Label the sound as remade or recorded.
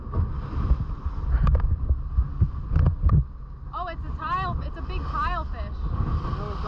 recorded